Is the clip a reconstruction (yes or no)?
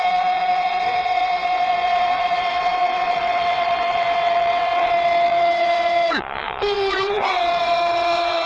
yes